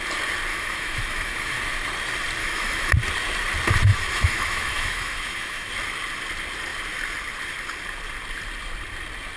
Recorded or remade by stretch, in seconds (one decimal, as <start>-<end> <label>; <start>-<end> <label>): 0.0-0.5 recorded; 0.5-1.6 remade; 1.6-2.4 recorded; 2.4-2.9 remade; 2.9-3.9 recorded; 3.9-5.7 remade; 5.7-9.4 recorded